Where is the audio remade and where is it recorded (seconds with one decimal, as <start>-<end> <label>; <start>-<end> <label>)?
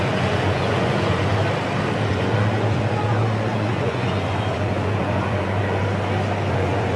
0.0-1.3 remade; 1.3-2.1 recorded; 2.1-5.8 remade; 5.8-6.5 recorded; 6.5-7.0 remade